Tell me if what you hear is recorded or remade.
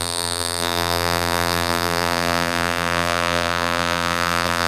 remade